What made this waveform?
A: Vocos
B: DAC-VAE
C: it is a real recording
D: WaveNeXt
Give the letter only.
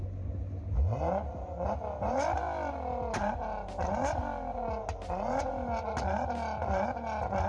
C